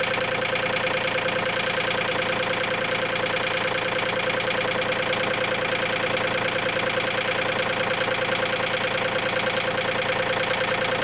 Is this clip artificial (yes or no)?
no